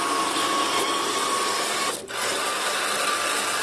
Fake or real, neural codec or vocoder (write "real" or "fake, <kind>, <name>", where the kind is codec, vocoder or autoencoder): real